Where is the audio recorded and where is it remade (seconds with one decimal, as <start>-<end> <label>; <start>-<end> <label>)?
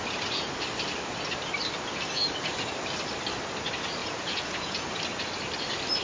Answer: 0.0-4.0 recorded; 4.0-4.8 remade; 4.8-6.0 recorded